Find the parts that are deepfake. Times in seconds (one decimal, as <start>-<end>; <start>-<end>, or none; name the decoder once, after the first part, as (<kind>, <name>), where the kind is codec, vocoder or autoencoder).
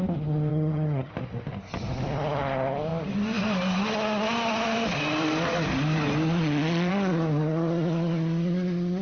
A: 0.5-1.1 (vocoder, HiFi-GAN)